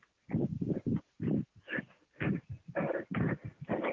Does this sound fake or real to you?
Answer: real